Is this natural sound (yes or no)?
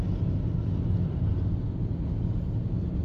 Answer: yes